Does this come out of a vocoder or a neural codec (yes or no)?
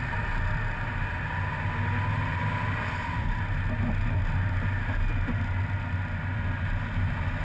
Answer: no